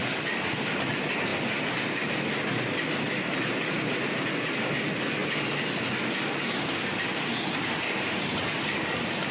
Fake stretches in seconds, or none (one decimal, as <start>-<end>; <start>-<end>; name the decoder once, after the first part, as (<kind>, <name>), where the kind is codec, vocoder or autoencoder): none